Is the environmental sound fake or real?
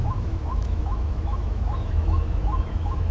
fake